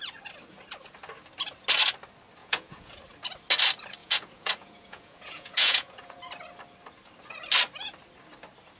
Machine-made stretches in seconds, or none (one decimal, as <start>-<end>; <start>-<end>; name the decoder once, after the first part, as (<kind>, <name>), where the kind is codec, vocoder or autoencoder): 2.4-3.0 (vocoder, Vocos); 4.0-6.2